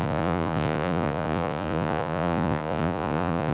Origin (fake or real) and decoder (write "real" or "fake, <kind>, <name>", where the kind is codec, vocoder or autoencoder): fake, vocoder, Vocos